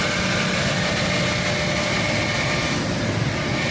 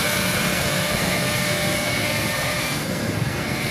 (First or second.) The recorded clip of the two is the first